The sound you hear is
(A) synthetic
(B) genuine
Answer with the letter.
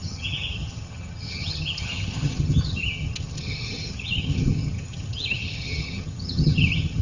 A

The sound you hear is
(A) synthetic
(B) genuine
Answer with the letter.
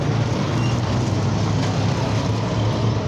B